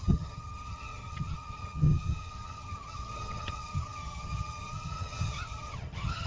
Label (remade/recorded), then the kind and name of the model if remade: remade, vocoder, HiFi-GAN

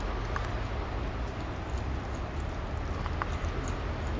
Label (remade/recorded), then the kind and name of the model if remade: recorded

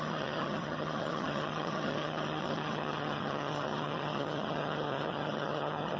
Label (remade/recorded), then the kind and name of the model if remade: remade, vocoder, HiFi-GAN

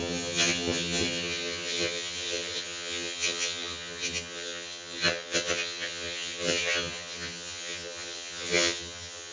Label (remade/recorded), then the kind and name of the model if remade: remade, vocoder, HiFi-GAN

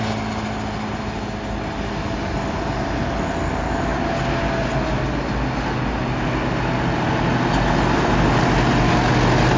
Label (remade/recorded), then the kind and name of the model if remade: recorded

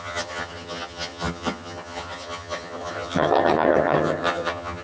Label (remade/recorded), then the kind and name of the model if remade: remade, vocoder, HiFi-GAN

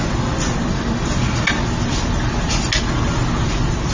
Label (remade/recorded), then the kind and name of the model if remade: recorded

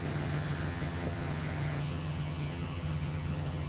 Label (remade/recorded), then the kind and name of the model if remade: remade, vocoder, HiFi-GAN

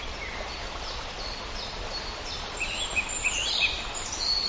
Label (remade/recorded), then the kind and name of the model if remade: recorded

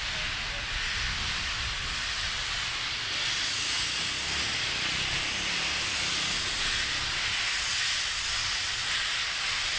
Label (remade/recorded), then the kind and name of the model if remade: recorded